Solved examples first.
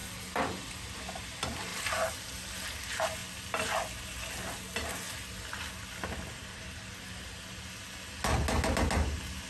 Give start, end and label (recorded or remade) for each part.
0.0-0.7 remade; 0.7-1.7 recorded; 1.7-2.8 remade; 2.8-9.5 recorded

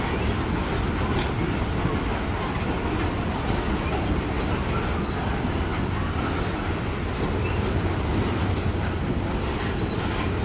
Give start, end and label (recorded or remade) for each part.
0.0-10.4 recorded

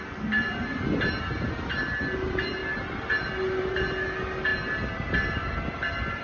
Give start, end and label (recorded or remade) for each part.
0.0-6.2 recorded

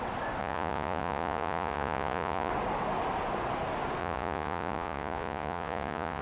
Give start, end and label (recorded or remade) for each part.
0.0-0.4 recorded; 0.4-2.5 remade; 2.5-4.0 recorded; 4.0-6.2 remade

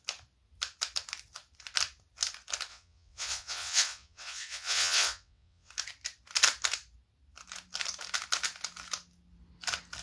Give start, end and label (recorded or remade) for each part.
0.0-2.7 recorded; 2.7-5.7 remade; 5.7-10.0 recorded